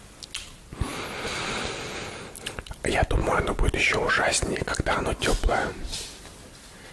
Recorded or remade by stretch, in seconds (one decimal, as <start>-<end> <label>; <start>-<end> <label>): 0.0-6.9 recorded